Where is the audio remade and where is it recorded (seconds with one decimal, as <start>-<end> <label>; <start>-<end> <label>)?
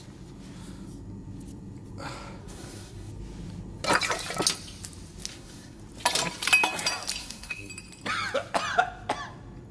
0.0-2.4 recorded; 2.4-3.1 remade; 3.1-5.3 recorded; 5.3-5.8 remade; 5.8-7.2 recorded; 7.2-7.7 remade; 7.7-9.7 recorded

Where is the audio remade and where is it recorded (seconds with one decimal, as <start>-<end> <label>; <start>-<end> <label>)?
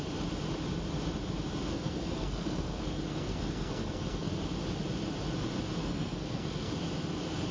0.0-1.7 recorded; 1.7-4.3 remade; 4.3-5.8 recorded; 5.8-6.7 remade; 6.7-7.5 recorded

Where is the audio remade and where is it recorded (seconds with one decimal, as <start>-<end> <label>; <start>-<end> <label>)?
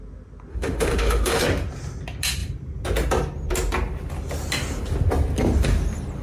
0.0-0.5 recorded; 0.5-1.4 remade; 1.4-6.2 recorded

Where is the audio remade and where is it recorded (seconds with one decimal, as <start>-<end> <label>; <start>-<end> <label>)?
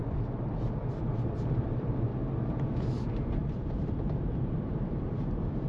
0.0-1.1 recorded; 1.1-2.1 remade; 2.1-2.9 recorded; 2.9-5.7 remade